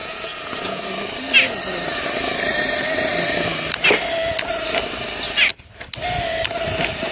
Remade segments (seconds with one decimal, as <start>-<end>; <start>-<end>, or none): 0.0-0.8